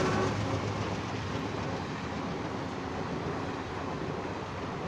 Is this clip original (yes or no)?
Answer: yes